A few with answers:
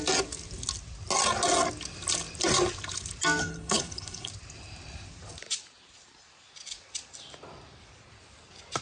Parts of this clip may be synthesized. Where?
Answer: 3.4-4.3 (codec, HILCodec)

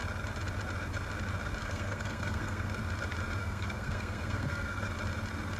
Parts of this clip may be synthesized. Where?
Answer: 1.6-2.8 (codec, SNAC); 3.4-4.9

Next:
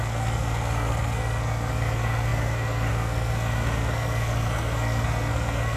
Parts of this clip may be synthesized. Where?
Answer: 0.0-5.8 (codec, SNAC)

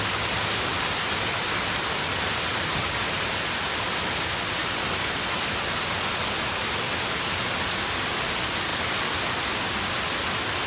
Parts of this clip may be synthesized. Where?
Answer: none